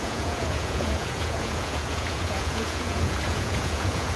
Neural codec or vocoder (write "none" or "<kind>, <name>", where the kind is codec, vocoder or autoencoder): vocoder, Vocos